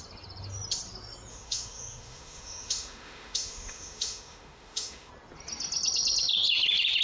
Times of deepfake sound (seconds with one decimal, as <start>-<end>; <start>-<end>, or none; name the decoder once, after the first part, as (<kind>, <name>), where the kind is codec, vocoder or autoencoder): 1.3-5.1 (autoencoder, DAC-VAE)